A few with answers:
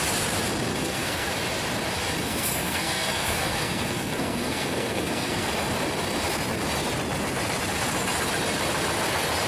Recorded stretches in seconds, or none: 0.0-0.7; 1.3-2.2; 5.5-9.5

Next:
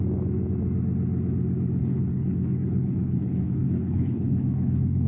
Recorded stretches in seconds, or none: 0.0-1.8

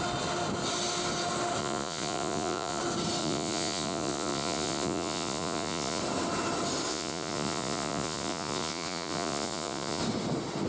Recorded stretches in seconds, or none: 0.0-1.6; 2.8-3.2; 6.0-6.9; 10.0-10.7

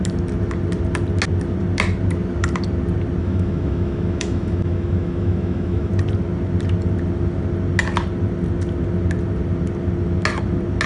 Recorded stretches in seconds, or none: 0.0-3.2; 5.9-10.9

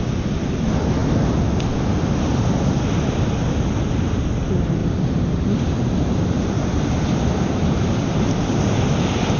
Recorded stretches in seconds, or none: 0.0-4.8; 8.6-9.4

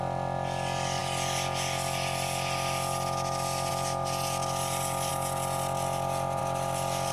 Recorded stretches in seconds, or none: 0.0-7.1

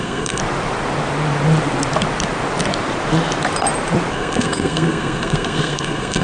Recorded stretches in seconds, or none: 0.4-4.1